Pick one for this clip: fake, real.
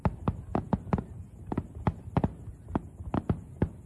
real